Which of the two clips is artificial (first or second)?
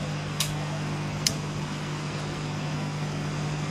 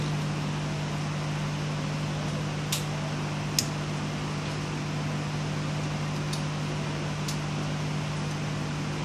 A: first